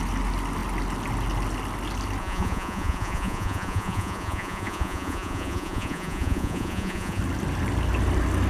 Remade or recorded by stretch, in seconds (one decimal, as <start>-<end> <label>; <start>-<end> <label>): 0.0-2.2 recorded; 2.2-7.2 remade; 7.2-8.5 recorded